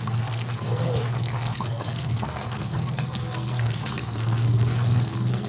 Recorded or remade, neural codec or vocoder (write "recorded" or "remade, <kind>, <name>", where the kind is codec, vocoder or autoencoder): remade, codec, SNAC